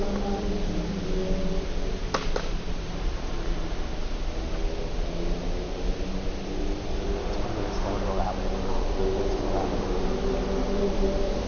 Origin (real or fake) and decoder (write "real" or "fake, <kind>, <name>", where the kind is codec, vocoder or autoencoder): real